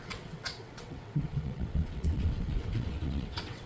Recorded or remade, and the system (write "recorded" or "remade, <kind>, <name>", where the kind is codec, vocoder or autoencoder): remade, vocoder, WaveNeXt